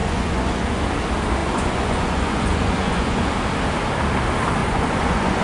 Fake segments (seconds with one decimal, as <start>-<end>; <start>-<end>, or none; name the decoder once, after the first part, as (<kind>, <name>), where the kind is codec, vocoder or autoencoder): 0.0-0.8 (vocoder, Vocos); 1.4-3.3; 4.6-5.4